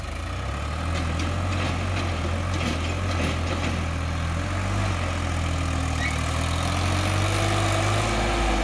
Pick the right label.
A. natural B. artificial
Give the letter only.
A